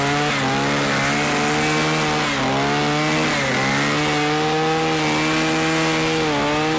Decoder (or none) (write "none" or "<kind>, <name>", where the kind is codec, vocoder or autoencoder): none